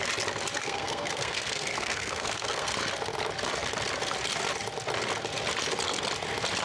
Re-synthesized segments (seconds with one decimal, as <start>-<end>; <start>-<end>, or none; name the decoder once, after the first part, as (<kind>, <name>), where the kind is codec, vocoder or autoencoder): 0.6-2.7 (codec, SNAC)